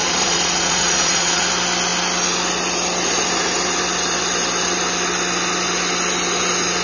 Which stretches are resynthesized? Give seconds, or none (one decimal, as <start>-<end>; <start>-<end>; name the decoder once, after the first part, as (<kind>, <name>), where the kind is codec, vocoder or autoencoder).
0.0-1.4 (vocoder, Vocos)